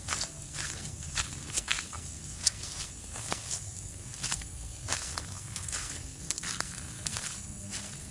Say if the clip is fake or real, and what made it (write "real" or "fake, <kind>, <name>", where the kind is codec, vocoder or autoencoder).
fake, codec, SNAC